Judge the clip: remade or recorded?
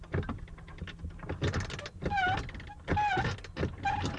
recorded